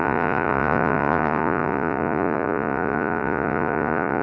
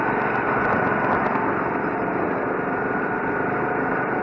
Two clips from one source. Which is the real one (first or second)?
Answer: second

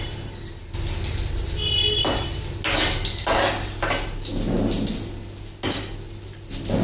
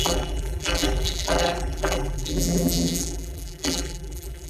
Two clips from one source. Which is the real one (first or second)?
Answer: first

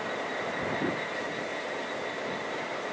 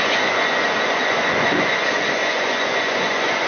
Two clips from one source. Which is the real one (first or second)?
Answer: first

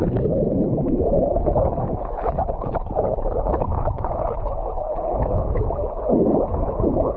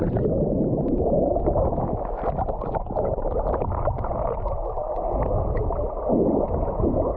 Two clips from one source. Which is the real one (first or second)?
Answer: second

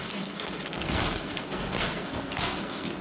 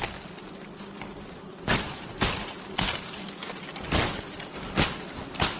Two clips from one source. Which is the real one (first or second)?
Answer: second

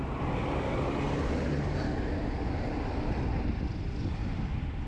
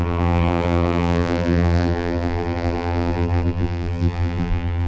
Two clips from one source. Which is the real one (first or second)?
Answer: first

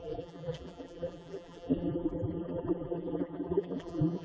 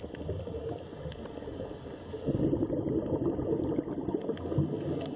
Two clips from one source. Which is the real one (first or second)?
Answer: second